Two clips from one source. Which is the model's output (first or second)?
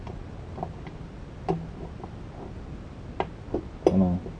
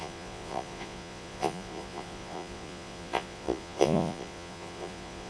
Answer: second